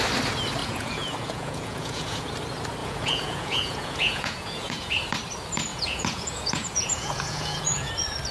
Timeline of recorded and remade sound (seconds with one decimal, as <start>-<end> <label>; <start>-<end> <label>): 0.0-0.6 recorded; 0.6-2.3 remade; 2.3-2.8 recorded; 2.8-4.9 remade; 4.9-5.7 recorded; 5.7-7.9 remade; 7.9-8.3 recorded